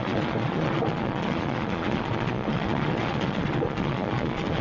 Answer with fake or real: fake